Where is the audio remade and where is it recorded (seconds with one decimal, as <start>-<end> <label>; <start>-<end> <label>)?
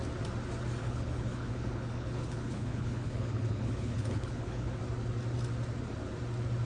0.0-0.8 recorded; 0.8-4.8 remade; 4.8-6.6 recorded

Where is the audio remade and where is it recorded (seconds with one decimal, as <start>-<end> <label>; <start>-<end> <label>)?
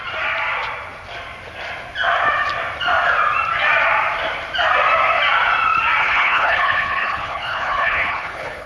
0.0-6.0 recorded; 6.0-8.7 remade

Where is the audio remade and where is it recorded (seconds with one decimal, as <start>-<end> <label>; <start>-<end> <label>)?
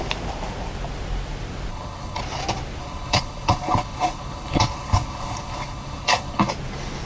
0.0-1.7 recorded; 1.7-2.2 remade; 2.2-2.8 recorded; 2.8-6.5 remade; 6.5-7.0 recorded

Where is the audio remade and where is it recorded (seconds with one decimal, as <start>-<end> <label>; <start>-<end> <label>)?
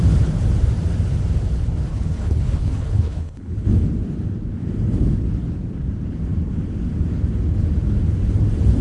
0.0-1.9 recorded; 1.9-3.7 remade; 3.7-8.8 recorded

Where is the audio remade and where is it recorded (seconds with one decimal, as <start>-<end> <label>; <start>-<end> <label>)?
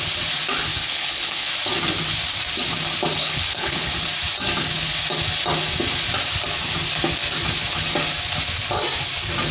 0.0-0.7 recorded; 0.7-1.5 remade; 1.5-3.2 recorded; 3.2-3.9 remade; 3.9-9.5 recorded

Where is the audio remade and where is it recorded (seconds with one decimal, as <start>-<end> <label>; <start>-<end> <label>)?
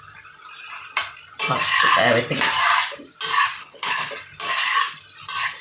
0.0-3.6 recorded; 3.6-4.1 remade; 4.1-5.6 recorded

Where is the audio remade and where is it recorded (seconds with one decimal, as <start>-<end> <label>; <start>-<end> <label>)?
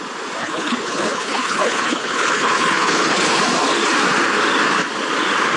0.0-0.4 recorded; 0.4-3.4 remade; 3.4-5.6 recorded